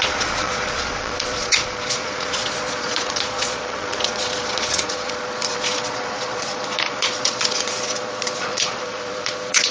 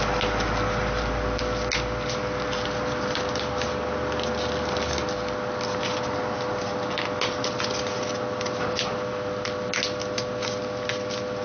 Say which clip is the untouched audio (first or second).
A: second